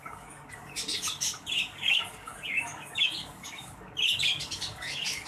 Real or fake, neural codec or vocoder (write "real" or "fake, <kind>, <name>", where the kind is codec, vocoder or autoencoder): fake, codec, DAC